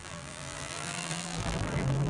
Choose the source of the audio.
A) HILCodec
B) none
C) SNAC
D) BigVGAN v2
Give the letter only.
D